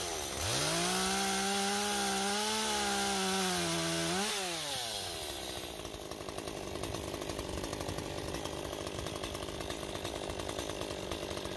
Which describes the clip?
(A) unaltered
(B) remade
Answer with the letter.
A